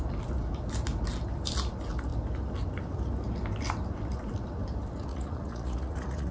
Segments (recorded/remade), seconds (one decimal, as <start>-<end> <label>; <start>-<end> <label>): 0.0-5.1 recorded; 5.1-6.3 remade